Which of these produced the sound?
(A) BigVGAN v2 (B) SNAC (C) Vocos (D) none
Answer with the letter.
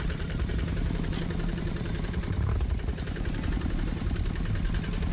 A